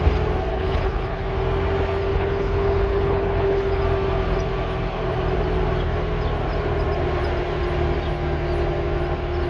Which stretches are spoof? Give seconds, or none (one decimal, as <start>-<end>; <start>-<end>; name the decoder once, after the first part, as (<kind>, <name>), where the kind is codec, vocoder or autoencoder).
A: 0.5-1.2 (codec, HILCodec); 2.1-3.8